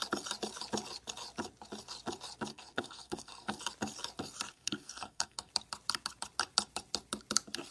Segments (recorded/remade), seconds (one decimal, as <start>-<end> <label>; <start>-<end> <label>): 0.0-2.5 recorded; 2.5-3.6 remade; 3.6-4.5 recorded; 4.5-5.5 remade; 5.5-7.7 recorded